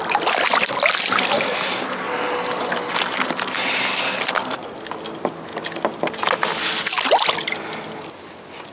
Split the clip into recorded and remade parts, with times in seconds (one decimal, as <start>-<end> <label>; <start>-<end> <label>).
0.0-8.7 recorded